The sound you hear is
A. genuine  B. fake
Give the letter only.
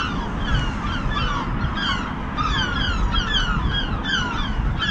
A